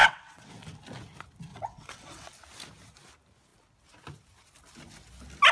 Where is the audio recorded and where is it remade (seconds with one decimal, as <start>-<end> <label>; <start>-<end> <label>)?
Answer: 0.0-0.5 remade; 0.5-1.5 recorded; 1.5-2.3 remade; 2.3-5.5 recorded